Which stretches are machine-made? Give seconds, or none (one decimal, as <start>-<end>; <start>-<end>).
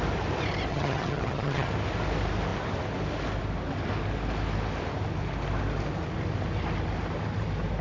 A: 0.7-1.7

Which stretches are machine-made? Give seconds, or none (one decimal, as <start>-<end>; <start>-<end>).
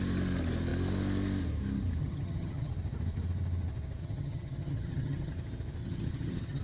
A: 2.0-2.7; 4.0-5.3; 5.8-6.6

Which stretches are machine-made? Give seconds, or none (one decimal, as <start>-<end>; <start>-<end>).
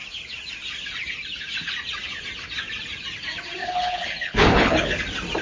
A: 3.6-5.0